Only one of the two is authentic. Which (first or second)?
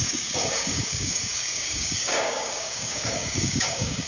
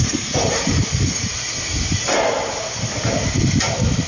second